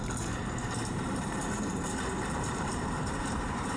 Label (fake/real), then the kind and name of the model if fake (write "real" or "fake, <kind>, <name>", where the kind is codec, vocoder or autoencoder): fake, vocoder, BigVGAN v2